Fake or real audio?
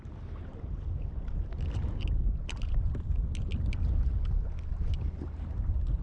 real